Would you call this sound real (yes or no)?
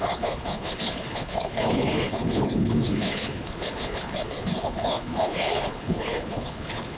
no